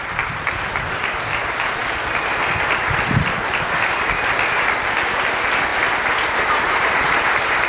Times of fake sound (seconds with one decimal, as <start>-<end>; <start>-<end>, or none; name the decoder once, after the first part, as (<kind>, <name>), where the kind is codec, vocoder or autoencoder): none

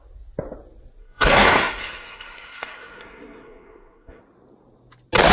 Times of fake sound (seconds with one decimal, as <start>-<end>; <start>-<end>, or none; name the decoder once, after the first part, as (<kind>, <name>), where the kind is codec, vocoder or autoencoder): 1.0-4.2 (codec, SNAC)

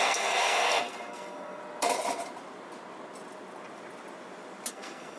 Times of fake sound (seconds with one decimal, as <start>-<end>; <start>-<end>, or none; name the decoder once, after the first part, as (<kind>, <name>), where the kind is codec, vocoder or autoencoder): 0.0-1.6 (codec, SNAC); 4.7-5.2

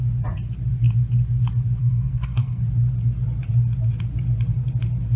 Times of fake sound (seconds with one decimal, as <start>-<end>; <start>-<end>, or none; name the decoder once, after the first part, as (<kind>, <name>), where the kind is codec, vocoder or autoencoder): 1.8-2.6 (codec, SNAC)